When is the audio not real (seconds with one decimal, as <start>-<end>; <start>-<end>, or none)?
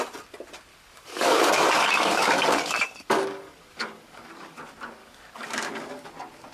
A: 0.7-4.6; 5.0-6.1